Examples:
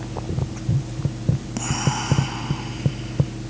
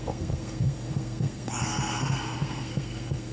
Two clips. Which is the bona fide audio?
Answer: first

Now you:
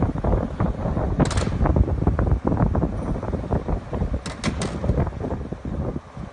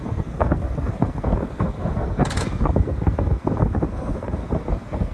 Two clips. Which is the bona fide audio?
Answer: first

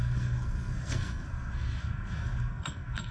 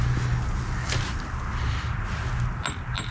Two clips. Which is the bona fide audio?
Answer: second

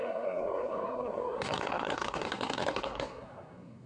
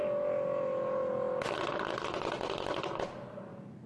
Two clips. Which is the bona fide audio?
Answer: second